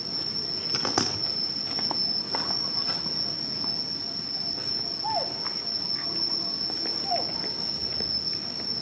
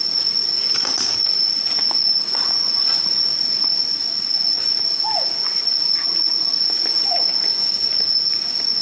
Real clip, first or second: first